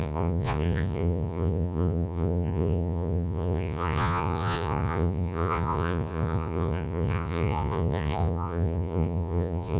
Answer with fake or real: fake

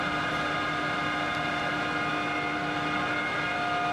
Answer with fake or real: real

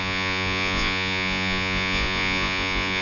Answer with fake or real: fake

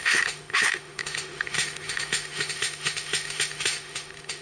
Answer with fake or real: fake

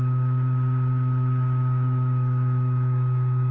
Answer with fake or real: fake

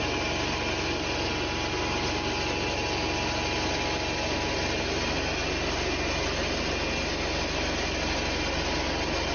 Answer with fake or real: real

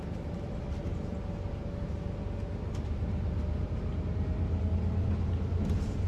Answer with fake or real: real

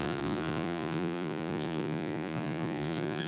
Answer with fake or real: fake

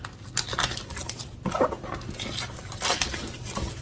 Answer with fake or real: real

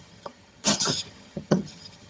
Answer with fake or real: fake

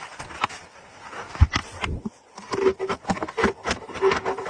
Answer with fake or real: real